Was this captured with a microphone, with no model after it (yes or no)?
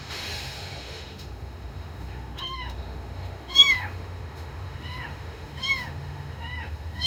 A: no